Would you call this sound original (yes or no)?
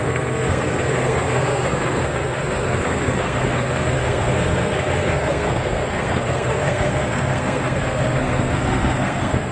no